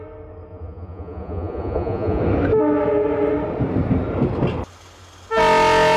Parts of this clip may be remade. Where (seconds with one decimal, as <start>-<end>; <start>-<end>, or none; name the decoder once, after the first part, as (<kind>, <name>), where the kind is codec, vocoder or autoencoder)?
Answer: 0.5-2.2 (vocoder, Vocos)